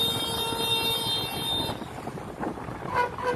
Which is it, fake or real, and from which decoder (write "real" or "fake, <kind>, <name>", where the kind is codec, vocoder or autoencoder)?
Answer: real